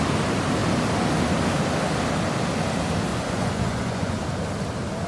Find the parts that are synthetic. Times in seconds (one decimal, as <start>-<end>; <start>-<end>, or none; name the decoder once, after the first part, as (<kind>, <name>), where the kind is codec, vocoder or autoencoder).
3.1-4.2 (vocoder, Vocos)